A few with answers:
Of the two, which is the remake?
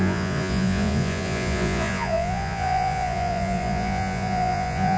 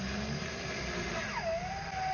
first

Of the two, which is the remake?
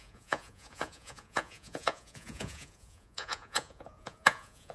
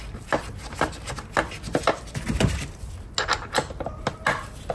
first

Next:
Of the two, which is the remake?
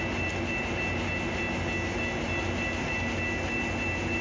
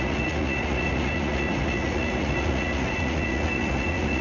second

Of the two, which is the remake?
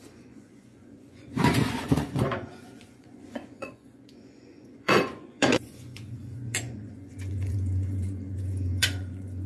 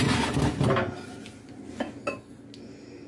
first